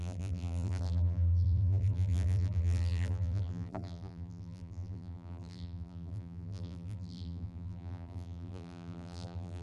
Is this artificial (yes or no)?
yes